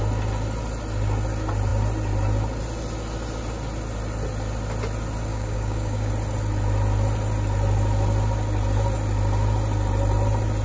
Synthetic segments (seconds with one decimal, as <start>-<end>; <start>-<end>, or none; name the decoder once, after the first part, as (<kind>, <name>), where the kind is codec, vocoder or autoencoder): 5.3-6.1 (codec, DAC)